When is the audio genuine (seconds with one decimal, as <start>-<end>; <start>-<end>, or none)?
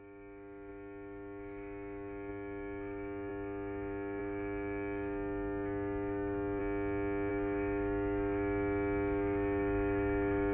6.6-7.3